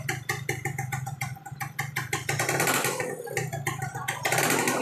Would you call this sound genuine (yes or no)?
yes